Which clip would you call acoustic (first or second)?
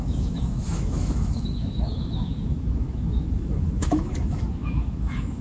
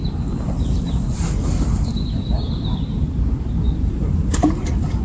second